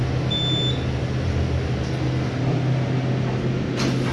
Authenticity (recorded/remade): recorded